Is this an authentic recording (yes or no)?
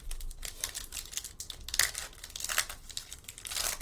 yes